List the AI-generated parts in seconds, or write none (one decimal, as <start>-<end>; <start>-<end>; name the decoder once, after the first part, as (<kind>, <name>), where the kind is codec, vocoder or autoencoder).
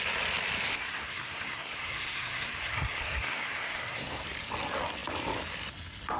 0.7-4.2 (codec, SNAC)